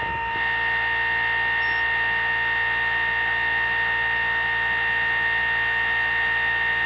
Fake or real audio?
real